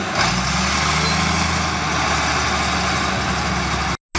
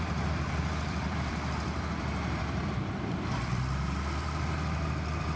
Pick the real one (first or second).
first